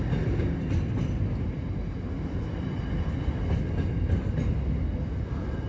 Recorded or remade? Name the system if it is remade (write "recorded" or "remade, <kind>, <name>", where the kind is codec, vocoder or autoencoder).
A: recorded